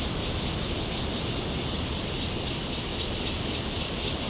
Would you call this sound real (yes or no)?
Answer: yes